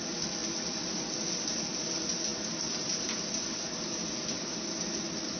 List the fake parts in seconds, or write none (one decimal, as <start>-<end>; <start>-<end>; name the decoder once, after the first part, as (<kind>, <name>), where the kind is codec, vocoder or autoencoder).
none